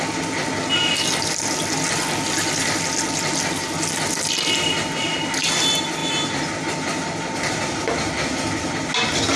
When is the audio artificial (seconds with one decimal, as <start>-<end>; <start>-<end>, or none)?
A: none